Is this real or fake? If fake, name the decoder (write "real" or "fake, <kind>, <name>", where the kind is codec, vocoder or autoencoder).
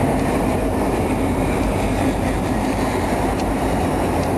fake, vocoder, BigVGAN v2